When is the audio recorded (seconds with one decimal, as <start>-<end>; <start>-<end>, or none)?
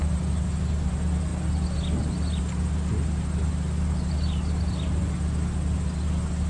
0.0-6.5